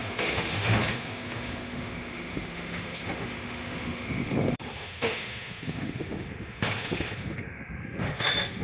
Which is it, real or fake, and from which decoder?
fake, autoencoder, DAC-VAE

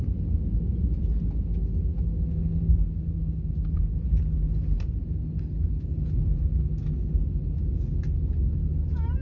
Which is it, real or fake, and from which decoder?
real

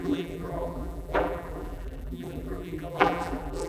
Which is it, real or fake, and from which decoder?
fake, vocoder, BigVGAN v2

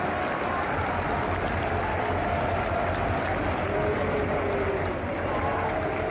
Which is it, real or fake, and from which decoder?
real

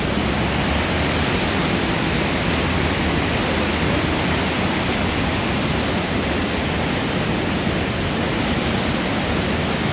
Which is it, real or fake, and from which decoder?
real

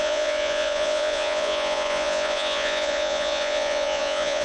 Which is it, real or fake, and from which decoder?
fake, vocoder, Vocos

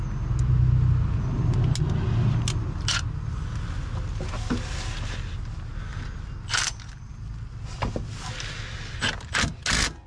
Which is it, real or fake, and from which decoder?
real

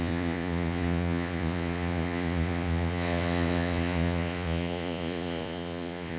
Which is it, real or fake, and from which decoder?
fake, vocoder, Vocos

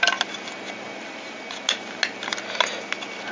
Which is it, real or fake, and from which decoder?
real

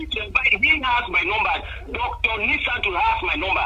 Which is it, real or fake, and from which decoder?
fake, vocoder, BigVGAN v2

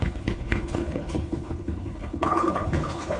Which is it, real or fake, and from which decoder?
fake, codec, HILCodec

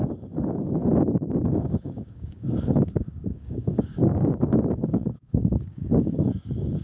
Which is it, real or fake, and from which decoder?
fake, codec, DAC